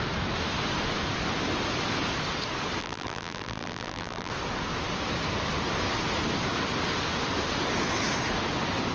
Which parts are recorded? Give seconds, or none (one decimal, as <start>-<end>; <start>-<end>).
0.0-2.8; 4.3-8.9